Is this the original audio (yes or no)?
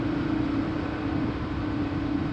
no